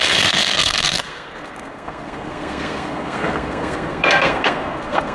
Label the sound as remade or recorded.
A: remade